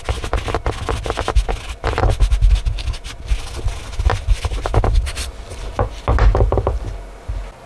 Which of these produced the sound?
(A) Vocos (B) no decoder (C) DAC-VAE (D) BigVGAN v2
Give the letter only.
B